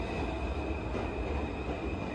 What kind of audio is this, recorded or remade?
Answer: recorded